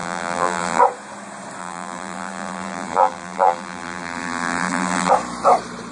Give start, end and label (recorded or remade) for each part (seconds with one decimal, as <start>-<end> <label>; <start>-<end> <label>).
0.0-0.8 remade; 0.8-1.6 recorded; 1.6-5.1 remade; 5.1-5.9 recorded

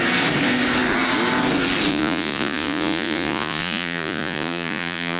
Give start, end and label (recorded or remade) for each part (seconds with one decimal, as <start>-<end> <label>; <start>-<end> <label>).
0.0-1.9 recorded; 1.9-5.2 remade